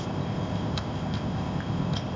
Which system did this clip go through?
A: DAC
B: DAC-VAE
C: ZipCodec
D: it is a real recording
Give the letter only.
C